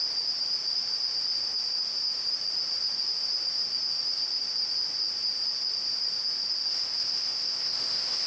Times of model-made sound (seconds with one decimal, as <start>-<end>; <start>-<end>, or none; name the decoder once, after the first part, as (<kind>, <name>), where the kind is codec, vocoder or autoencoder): 6.7-8.3 (codec, ZipCodec)